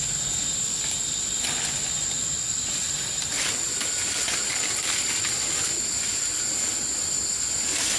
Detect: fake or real real